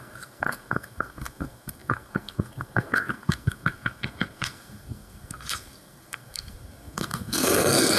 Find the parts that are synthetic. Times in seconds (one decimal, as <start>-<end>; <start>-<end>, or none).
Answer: 0.0-8.0